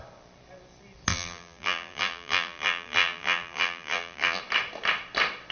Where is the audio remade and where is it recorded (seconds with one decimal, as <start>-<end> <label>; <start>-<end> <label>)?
0.0-1.1 recorded; 1.1-4.4 remade; 4.4-5.5 recorded